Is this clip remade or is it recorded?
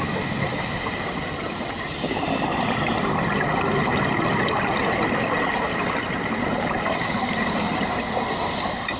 recorded